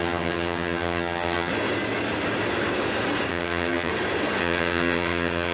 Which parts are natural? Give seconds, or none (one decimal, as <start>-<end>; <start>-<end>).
1.5-3.3; 3.9-4.4